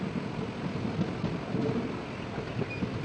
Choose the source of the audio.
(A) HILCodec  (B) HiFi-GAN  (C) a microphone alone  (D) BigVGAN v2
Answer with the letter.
C